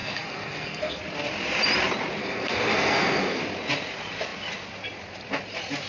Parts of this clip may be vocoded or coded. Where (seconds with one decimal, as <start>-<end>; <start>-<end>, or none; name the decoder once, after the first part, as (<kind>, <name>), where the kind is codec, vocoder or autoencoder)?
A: 0.0-1.0 (codec, SNAC); 2.2-3.4